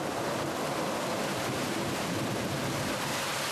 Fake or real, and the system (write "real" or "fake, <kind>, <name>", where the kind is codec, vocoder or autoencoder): real